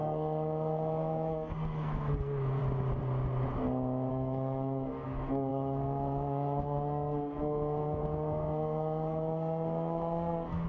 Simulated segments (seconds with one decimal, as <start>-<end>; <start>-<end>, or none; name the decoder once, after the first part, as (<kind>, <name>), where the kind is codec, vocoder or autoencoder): 0.0-2.6 (codec, SNAC); 4.1-10.7